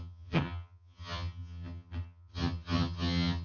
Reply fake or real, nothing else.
fake